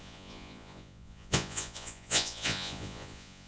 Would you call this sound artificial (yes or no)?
yes